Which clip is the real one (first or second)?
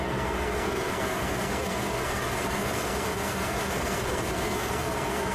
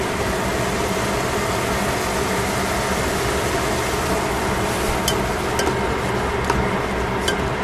second